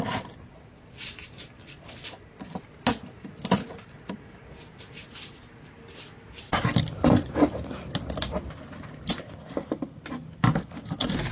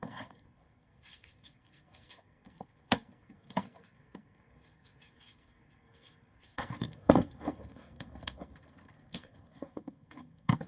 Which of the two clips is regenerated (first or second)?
second